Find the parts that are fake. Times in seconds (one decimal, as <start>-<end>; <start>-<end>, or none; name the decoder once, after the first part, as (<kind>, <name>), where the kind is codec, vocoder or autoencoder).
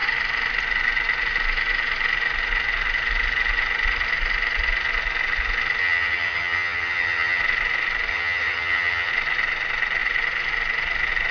5.8-7.4 (vocoder, HiFi-GAN); 8.1-9.1